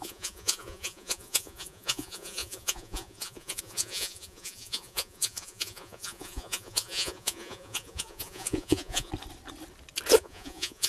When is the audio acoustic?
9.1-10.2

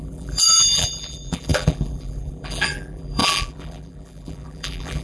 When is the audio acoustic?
none

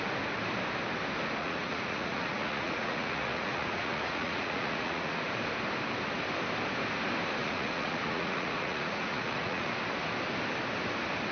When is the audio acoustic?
0.0-1.4; 5.2-7.4; 9.7-11.3

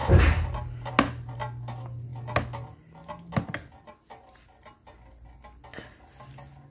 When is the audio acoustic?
0.0-6.7

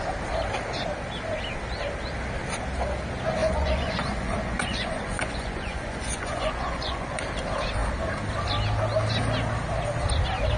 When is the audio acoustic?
0.0-3.4; 7.2-10.6

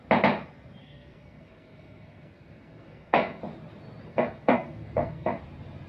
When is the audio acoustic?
0.0-0.8; 3.4-4.1; 5.4-5.9

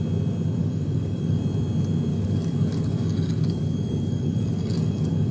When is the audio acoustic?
0.0-0.6; 1.4-2.1

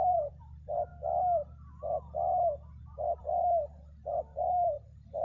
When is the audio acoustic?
0.9-3.2